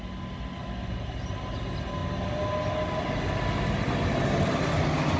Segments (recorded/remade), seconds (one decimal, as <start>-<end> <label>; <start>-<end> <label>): 0.0-5.2 recorded